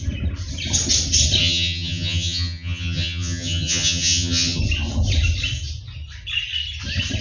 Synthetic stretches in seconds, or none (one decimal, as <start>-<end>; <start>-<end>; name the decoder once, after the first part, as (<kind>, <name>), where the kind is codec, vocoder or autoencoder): 1.4-4.6 (vocoder, HiFi-GAN)

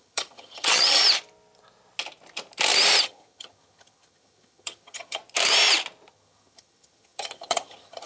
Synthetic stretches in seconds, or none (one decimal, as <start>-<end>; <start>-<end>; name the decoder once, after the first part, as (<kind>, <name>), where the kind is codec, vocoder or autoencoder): 0.0-1.0 (vocoder, HiFi-GAN); 3.0-5.2; 6.1-8.1

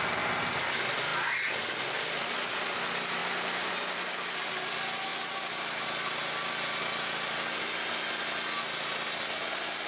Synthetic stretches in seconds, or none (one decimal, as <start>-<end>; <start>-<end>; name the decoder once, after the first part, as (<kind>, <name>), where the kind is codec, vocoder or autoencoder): none

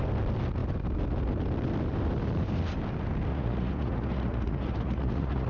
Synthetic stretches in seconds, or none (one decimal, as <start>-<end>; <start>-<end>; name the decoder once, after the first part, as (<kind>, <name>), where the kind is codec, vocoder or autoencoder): 3.3-5.5 (vocoder, Vocos)

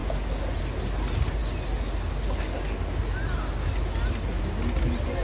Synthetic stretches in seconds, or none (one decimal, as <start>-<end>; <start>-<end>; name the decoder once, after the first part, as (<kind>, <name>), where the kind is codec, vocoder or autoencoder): none

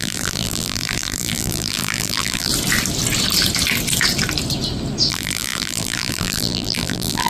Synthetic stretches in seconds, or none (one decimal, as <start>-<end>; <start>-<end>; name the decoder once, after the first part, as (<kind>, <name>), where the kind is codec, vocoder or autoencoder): 0.0-2.5 (vocoder, BigVGAN v2); 5.1-7.3

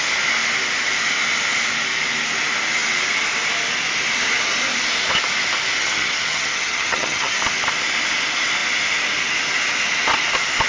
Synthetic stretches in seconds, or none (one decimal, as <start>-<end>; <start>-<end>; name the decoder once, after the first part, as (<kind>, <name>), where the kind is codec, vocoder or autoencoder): 5.8-7.4 (vocoder, HiFi-GAN)

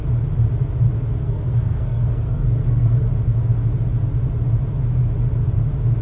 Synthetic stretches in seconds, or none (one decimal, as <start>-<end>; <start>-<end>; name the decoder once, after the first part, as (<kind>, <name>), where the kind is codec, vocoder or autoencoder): 1.2-3.1 (codec, SNAC)